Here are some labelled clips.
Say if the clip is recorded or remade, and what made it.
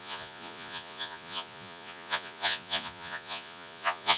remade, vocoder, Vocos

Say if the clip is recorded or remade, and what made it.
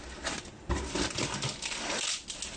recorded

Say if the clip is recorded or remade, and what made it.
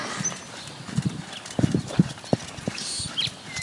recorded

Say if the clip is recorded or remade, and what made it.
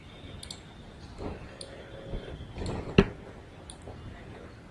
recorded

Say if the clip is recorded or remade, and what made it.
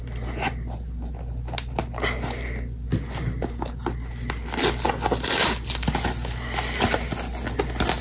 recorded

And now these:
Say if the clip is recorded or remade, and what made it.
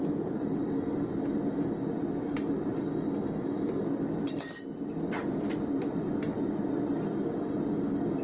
recorded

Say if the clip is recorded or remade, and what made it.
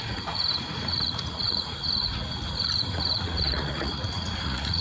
remade, vocoder, Vocos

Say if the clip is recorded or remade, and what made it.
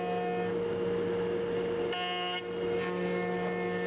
recorded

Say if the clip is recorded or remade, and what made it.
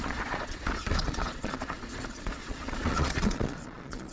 remade, vocoder, Vocos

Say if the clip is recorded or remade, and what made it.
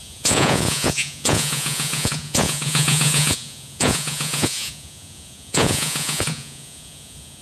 remade, vocoder, Vocos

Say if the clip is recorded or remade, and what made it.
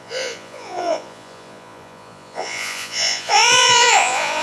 remade, vocoder, Vocos